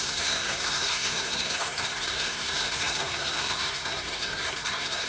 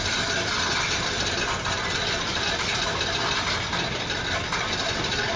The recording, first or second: second